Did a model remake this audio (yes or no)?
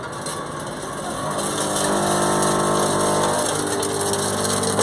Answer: no